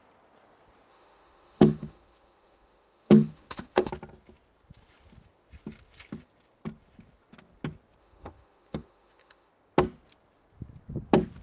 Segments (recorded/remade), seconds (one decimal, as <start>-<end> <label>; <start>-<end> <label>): 0.0-0.9 recorded; 0.9-3.9 remade; 3.9-8.0 recorded; 8.0-9.5 remade; 9.5-11.4 recorded